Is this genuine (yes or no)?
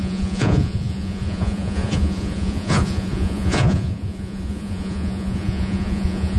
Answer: no